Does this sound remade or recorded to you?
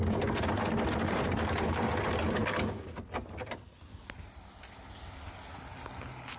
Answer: recorded